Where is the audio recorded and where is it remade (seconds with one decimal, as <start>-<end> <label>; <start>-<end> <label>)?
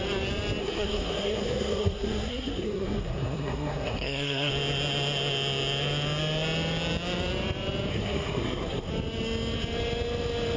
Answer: 0.0-0.6 recorded; 0.6-4.5 remade; 4.5-7.9 recorded; 7.9-8.9 remade; 8.9-10.6 recorded